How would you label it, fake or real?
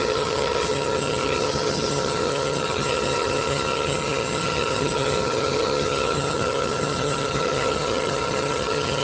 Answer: fake